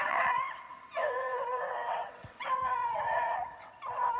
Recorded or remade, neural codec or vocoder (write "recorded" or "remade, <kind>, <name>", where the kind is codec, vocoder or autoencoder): remade, vocoder, WaveNeXt